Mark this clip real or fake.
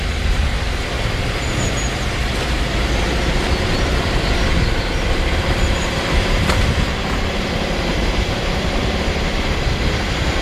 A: fake